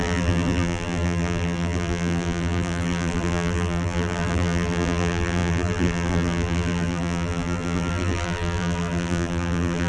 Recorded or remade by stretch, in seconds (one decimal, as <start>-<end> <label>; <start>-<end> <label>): 0.0-9.9 remade